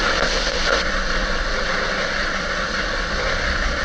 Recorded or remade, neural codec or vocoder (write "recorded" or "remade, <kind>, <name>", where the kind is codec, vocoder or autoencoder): remade, vocoder, Vocos